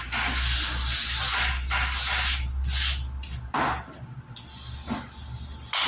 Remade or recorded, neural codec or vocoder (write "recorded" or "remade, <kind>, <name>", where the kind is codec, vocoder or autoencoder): recorded